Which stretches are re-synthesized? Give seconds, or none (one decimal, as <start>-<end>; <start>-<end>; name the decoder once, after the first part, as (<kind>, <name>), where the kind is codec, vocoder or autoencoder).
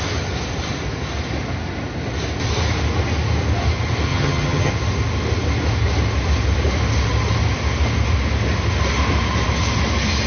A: 4.1-4.7 (vocoder, HiFi-GAN)